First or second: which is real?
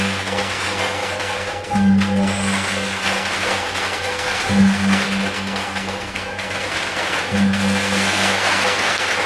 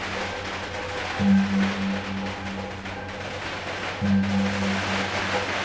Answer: second